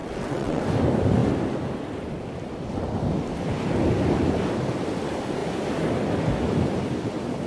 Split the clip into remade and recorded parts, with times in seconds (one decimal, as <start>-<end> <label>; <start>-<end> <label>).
0.0-0.6 remade; 0.6-7.5 recorded